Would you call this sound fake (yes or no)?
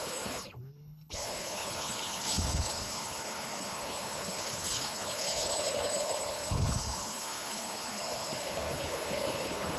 yes